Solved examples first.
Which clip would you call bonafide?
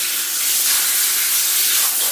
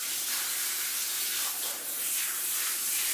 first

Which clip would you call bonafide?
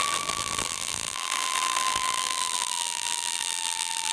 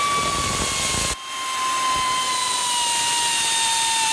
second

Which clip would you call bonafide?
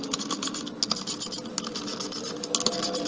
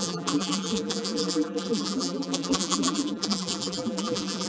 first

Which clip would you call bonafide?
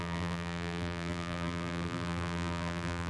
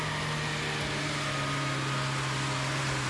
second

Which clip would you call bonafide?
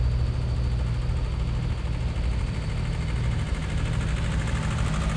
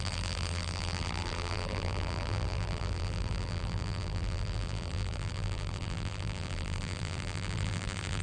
first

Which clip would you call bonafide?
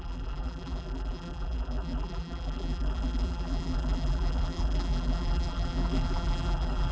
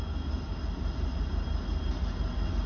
second